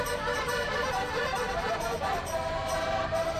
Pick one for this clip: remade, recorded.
remade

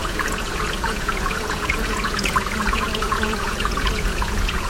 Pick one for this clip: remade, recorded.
remade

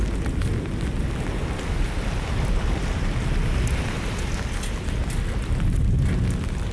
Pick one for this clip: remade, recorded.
recorded